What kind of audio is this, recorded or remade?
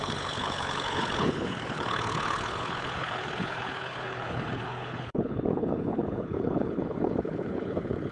remade